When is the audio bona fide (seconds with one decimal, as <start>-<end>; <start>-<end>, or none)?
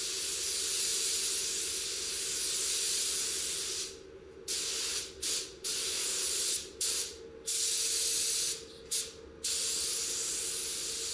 0.0-5.7; 7.2-11.1